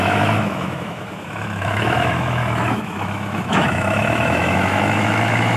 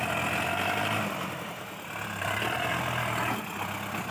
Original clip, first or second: second